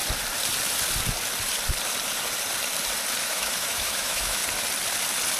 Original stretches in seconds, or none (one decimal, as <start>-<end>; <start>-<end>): 0.0-3.2; 4.4-5.4